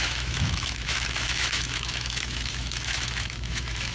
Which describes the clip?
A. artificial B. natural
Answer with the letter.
A